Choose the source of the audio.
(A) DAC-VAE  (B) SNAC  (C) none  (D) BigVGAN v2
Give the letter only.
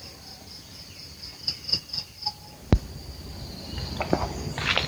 C